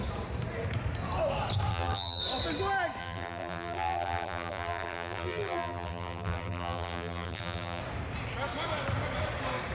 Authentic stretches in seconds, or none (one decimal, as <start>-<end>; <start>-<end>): 0.0-1.7; 2.2-3.0; 7.8-9.7